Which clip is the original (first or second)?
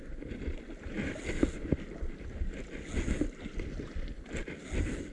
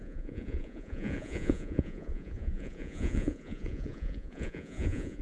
first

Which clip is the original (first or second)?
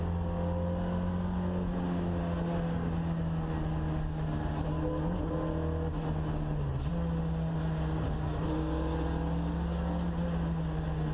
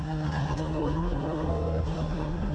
first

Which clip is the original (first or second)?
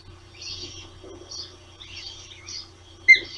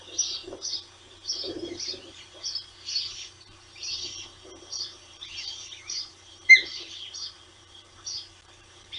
first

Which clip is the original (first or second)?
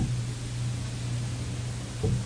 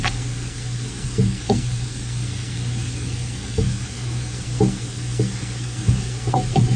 first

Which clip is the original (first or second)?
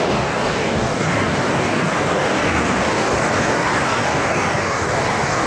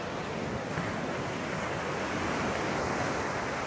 second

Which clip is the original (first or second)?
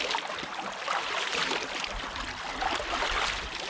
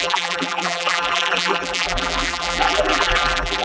first